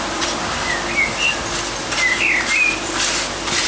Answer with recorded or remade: recorded